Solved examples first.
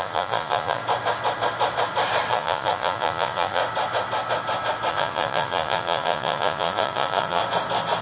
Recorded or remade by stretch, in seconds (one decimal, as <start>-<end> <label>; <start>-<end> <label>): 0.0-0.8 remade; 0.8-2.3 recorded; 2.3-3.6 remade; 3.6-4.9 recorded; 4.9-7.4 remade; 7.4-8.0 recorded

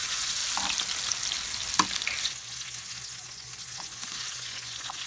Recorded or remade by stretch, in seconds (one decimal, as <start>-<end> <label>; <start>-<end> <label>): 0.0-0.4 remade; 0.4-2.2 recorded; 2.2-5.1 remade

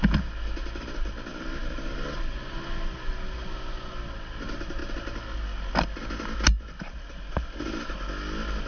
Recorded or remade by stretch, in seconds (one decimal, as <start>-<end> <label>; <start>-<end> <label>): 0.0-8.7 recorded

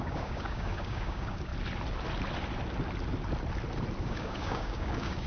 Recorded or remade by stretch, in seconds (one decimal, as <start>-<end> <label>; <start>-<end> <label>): 0.0-1.5 remade; 1.5-4.0 recorded; 4.0-5.3 remade